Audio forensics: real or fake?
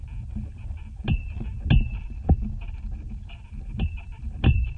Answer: real